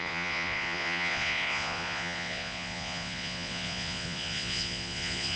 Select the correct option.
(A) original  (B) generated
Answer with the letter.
B